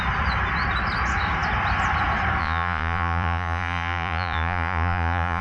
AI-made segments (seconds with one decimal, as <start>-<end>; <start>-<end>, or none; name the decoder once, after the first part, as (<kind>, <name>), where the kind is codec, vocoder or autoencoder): 2.4-5.4 (vocoder, Vocos)